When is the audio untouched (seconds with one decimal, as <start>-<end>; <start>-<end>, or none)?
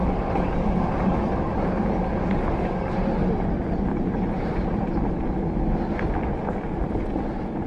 0.0-3.9; 5.2-7.7